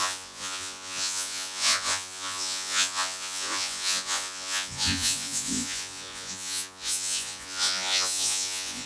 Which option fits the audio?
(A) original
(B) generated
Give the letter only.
B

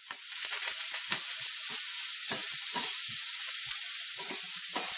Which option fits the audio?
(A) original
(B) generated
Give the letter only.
B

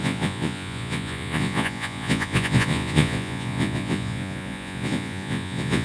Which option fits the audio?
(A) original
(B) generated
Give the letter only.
B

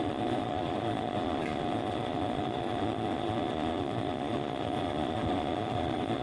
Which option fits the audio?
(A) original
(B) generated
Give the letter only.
B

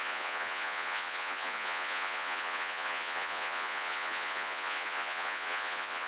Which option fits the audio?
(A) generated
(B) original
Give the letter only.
A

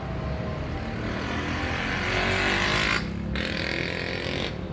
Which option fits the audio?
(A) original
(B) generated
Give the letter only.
A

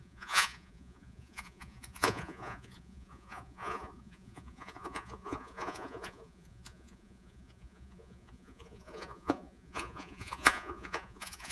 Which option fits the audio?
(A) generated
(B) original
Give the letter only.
A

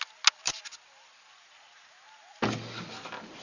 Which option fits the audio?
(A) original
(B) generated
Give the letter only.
A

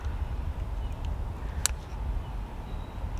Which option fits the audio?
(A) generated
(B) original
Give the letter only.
B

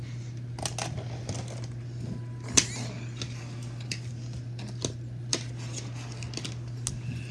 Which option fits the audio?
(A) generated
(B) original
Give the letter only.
B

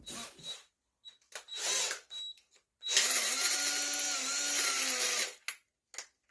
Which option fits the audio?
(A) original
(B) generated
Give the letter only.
A